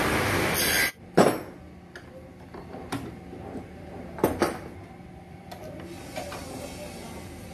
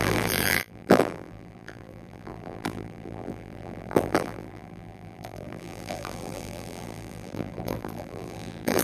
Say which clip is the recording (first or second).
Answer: first